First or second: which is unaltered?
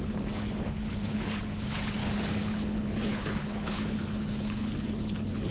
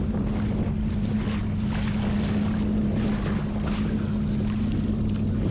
second